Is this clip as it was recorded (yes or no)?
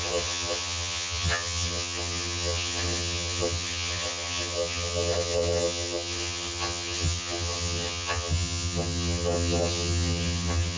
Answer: no